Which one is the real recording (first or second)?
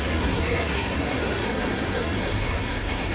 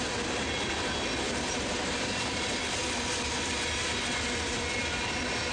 second